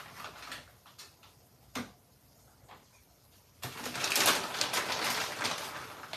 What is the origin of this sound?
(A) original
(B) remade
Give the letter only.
A